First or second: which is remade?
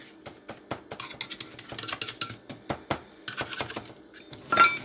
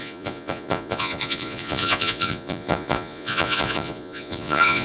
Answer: second